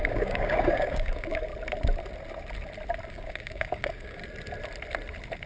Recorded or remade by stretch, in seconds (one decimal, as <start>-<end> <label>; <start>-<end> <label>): 0.0-1.5 remade; 1.5-3.1 recorded; 3.1-4.2 remade; 4.2-5.5 recorded

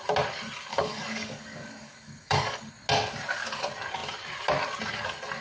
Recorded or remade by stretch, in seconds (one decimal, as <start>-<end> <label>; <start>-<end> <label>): 0.0-0.7 recorded; 0.7-2.7 remade; 2.7-5.4 recorded

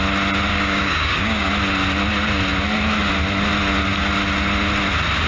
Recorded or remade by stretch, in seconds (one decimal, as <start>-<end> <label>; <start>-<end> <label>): 0.0-0.5 recorded; 0.5-1.5 remade; 1.5-5.3 recorded

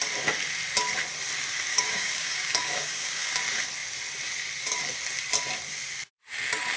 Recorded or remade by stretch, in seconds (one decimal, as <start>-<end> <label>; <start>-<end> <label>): 0.0-1.7 recorded; 1.7-3.4 remade; 3.4-6.8 recorded

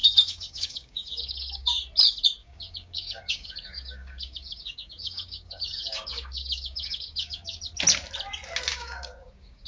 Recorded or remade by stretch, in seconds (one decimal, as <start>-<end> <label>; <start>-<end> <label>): 0.0-1.8 remade; 1.8-2.4 recorded; 2.4-7.6 remade; 7.6-8.7 recorded; 8.7-9.7 remade

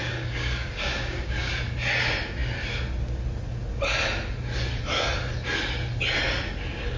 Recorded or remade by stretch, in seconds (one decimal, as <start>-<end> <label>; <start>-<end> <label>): 0.0-1.5 remade; 1.5-7.0 recorded

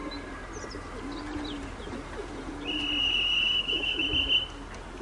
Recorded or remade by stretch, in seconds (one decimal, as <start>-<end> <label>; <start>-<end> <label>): 0.0-3.0 recorded; 3.0-4.0 remade; 4.0-5.0 recorded

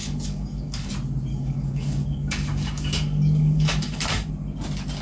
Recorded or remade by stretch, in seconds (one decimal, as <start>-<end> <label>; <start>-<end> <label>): 0.0-0.9 remade; 0.9-1.3 recorded; 1.3-4.3 remade; 4.3-5.0 recorded